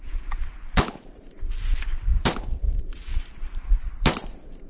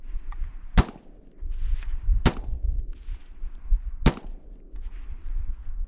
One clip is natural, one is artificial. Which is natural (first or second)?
second